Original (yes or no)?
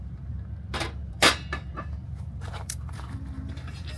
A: no